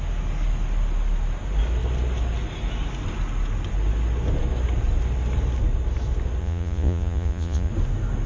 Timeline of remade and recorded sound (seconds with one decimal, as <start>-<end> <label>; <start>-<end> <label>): 0.0-6.4 recorded; 6.4-7.7 remade; 7.7-8.3 recorded